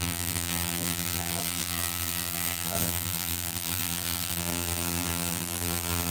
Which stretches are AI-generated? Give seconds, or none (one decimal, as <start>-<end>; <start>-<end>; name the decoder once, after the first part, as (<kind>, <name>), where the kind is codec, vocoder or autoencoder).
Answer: 0.0-6.1 (vocoder, BigVGAN v2)